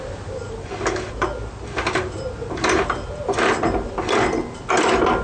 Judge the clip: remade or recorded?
recorded